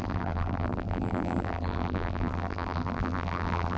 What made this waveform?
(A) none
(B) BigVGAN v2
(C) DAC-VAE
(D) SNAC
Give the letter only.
B